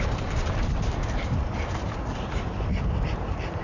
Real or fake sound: fake